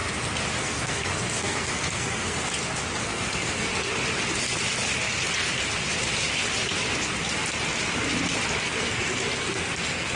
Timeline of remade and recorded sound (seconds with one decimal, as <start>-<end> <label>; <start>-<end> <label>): 0.0-0.6 recorded; 0.6-2.5 remade; 2.5-3.0 recorded; 3.0-3.7 remade; 3.7-8.6 recorded; 8.6-10.2 remade